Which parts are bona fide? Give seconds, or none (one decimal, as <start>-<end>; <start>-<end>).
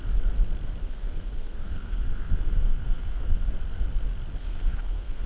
0.0-0.8; 3.5-4.4